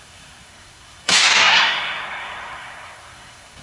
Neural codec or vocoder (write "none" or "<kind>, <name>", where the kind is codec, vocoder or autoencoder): codec, SNAC